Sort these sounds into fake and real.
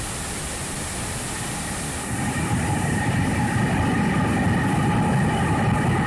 real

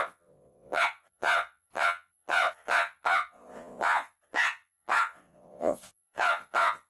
fake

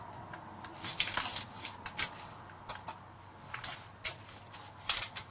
real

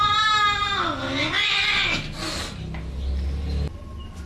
real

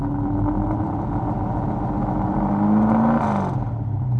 real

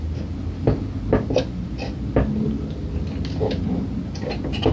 real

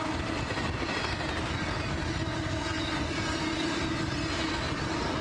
real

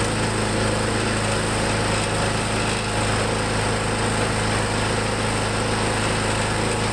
real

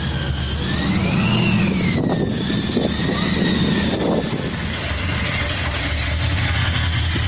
real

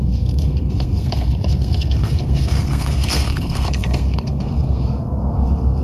fake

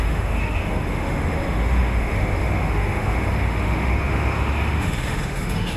fake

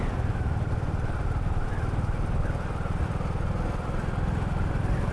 real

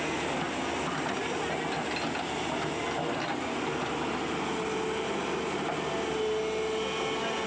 real